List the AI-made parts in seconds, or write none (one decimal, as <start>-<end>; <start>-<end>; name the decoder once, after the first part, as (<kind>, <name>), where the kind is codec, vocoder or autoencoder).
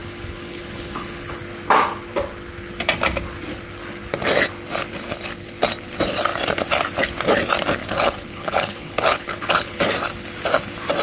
0.0-1.4 (codec, HILCodec); 7.8-9.8